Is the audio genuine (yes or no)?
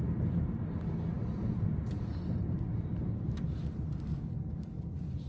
yes